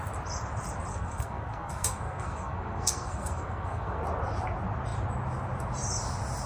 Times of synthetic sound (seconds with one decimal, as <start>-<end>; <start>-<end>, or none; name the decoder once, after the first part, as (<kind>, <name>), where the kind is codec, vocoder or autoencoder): 0.9-4.0 (codec, SNAC)